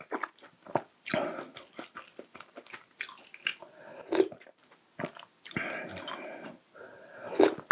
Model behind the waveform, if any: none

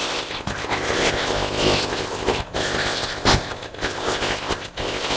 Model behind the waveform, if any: codec, ZipCodec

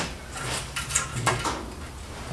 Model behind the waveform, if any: none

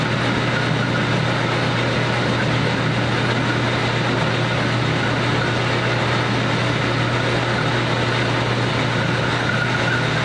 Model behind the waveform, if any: none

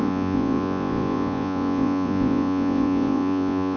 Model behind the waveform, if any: vocoder, Vocos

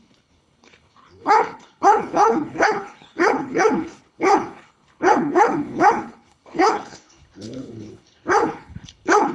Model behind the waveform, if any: codec, HILCodec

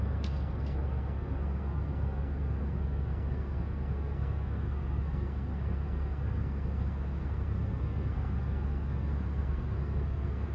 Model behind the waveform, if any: codec, SNAC